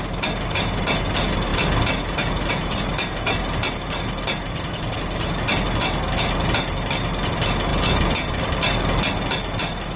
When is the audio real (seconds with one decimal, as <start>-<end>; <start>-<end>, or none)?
0.0-10.0